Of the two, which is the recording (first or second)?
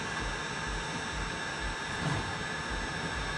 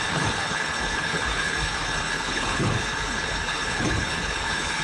first